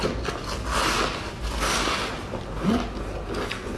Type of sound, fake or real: real